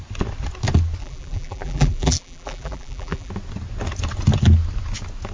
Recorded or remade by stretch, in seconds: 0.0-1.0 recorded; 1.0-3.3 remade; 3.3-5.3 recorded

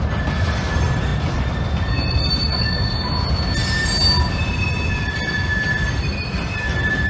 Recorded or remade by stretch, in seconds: 0.0-1.1 recorded; 1.1-1.7 remade; 1.7-7.1 recorded